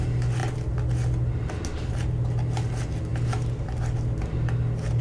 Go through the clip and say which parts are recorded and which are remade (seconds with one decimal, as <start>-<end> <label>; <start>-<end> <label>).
0.0-5.0 recorded